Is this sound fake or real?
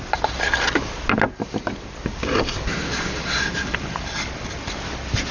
real